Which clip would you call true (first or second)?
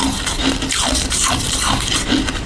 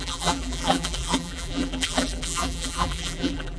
first